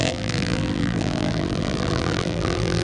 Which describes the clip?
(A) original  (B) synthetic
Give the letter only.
B